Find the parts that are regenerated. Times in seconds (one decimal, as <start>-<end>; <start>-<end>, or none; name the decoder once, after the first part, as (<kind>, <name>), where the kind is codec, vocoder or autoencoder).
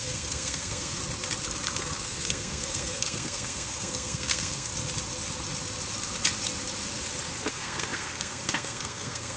0.0-1.0 (codec, SNAC); 1.8-4.7; 7.5-9.4